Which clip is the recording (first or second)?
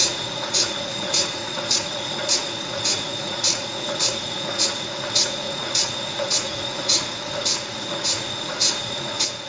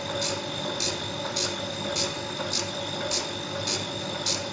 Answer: second